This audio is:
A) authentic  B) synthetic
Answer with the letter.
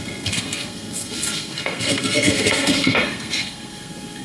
B